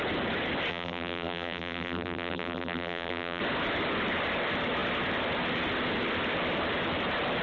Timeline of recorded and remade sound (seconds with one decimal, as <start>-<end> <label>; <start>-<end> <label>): 0.0-0.7 recorded; 0.7-3.4 remade; 3.4-7.4 recorded